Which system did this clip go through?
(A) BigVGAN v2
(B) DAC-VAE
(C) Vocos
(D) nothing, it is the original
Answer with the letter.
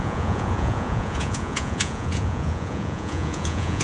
C